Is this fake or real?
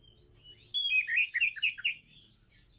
real